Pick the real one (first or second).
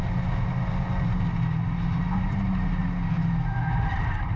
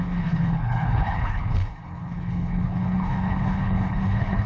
first